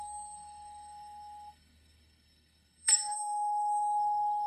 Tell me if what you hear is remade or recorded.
remade